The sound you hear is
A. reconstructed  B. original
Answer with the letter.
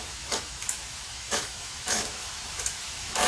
A